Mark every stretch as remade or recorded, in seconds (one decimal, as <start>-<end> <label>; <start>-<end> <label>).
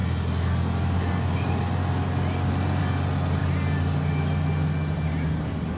0.0-5.8 recorded